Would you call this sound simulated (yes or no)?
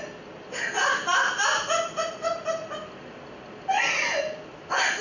no